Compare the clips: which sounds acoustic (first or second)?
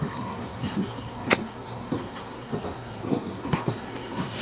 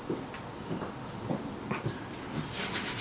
second